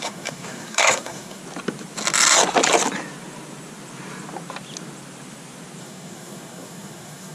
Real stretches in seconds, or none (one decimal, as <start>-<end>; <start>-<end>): 1.4-5.8